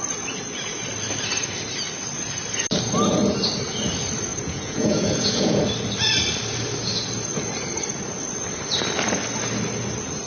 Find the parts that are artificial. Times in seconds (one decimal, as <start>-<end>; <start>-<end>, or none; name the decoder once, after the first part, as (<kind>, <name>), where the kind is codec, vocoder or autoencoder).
4.3-5.6 (vocoder, Vocos)